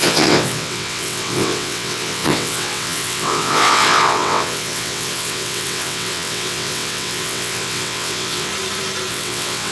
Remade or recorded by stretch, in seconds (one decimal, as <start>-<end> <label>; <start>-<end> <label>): 0.0-8.5 remade; 8.5-9.1 recorded; 9.1-9.7 remade